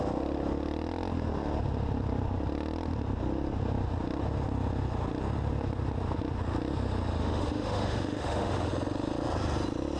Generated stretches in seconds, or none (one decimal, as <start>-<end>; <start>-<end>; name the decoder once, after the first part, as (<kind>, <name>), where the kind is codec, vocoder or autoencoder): 7.2-8.7 (autoencoder, DAC-VAE)